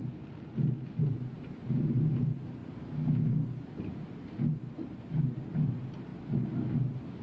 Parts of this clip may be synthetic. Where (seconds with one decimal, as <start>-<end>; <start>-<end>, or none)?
1.0-2.6; 4.5-6.1